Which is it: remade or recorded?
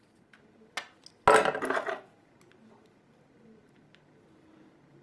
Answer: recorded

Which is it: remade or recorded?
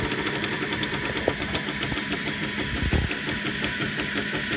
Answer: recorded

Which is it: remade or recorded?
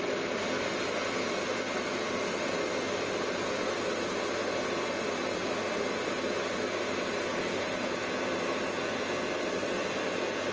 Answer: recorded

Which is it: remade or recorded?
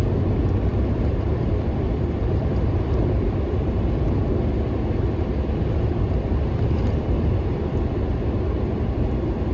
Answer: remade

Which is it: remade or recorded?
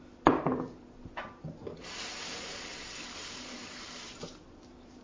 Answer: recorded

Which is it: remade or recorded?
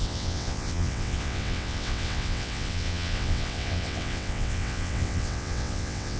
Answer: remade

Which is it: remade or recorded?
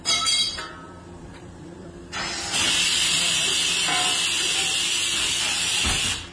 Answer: remade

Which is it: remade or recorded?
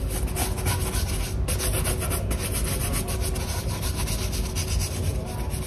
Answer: recorded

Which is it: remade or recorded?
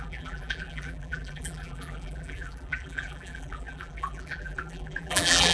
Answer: remade